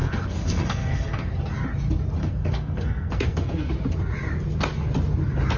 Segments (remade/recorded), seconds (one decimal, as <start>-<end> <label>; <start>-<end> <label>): 0.0-1.3 remade; 1.3-2.2 recorded; 2.2-3.7 remade; 3.7-5.6 recorded